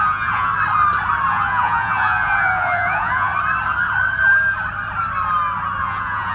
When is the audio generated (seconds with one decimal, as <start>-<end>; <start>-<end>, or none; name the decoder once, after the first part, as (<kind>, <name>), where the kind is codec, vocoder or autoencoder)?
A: 0.0-0.5 (vocoder, Vocos); 1.3-3.3; 5.8-6.3